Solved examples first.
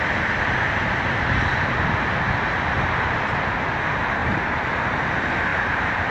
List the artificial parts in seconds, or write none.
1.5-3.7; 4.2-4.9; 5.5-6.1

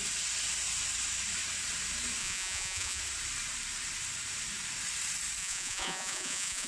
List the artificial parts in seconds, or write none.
2.2-3.0; 5.4-6.7

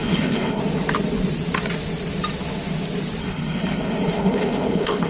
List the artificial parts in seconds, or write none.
0.0-0.6; 3.2-5.1